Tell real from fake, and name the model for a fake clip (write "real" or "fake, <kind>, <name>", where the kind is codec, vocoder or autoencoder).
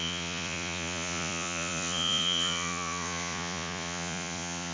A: fake, vocoder, Vocos